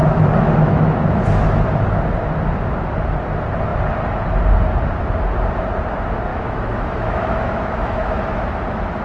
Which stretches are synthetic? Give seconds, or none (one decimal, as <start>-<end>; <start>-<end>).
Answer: 0.0-1.2; 6.3-8.4